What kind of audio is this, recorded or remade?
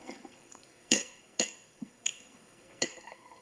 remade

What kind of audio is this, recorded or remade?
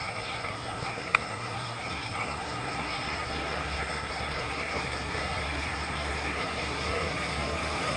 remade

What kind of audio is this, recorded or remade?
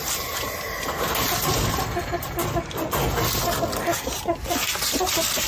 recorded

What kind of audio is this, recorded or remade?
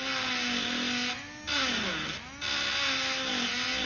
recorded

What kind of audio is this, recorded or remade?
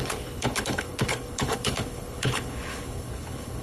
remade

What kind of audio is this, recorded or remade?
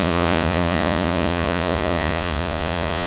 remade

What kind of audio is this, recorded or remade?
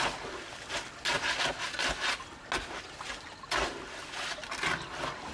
recorded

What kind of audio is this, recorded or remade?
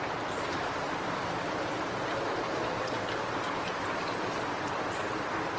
remade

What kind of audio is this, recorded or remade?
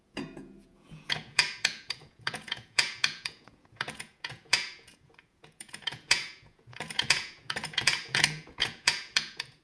remade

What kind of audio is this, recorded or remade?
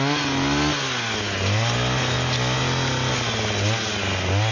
recorded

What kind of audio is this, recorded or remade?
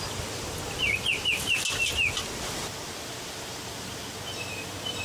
recorded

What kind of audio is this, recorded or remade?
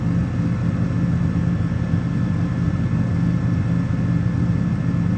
recorded